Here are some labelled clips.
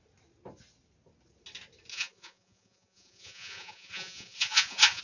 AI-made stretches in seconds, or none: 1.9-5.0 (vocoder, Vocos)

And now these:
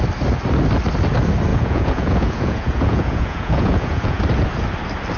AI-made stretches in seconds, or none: 1.5-4.2 (vocoder, Vocos)

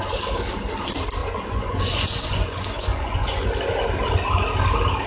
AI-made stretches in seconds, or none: 1.2-3.5 (vocoder, Vocos)

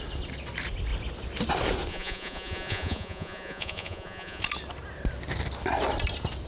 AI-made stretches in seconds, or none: 1.9-4.4 (vocoder, Vocos)